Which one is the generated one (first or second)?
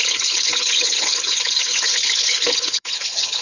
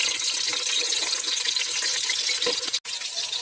first